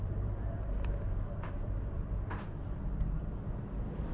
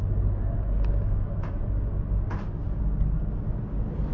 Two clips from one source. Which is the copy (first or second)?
first